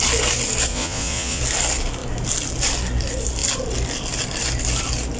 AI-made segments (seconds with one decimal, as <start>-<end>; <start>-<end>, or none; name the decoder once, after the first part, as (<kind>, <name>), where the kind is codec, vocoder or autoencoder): 0.7-1.4 (vocoder, Vocos)